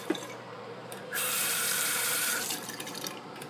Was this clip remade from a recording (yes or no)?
yes